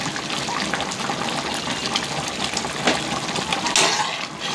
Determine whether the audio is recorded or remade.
recorded